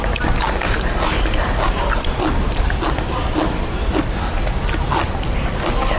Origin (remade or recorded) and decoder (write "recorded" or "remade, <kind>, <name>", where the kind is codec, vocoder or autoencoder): recorded